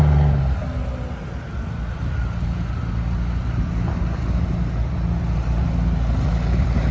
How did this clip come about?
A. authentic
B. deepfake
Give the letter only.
A